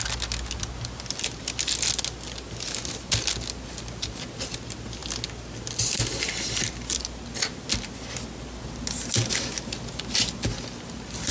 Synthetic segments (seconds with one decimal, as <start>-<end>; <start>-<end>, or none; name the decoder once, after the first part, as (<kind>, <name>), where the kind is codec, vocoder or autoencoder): none